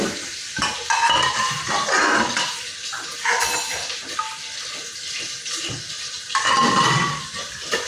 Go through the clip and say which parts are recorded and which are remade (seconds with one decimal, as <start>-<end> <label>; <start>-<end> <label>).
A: 0.0-7.9 recorded